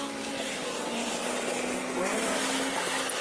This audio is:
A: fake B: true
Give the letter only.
B